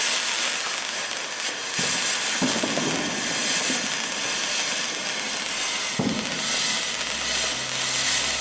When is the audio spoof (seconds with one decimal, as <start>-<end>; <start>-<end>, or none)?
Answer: none